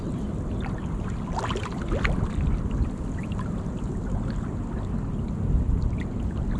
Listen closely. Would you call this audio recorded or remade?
recorded